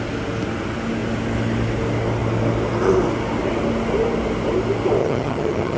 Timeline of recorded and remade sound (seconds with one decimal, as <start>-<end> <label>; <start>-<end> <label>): 0.0-5.0 recorded; 5.0-5.8 remade